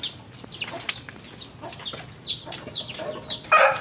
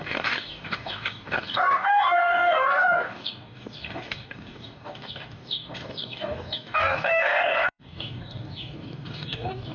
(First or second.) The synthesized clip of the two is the second